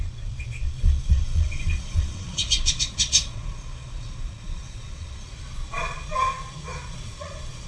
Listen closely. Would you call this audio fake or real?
fake